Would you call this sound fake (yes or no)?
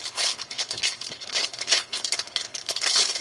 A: yes